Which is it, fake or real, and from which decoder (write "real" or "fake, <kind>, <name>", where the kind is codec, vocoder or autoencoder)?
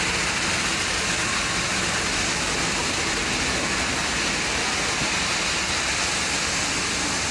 real